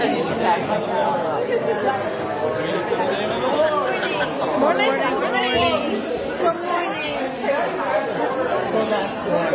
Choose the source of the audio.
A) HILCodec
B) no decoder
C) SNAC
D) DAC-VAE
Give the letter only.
B